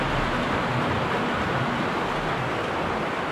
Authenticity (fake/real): real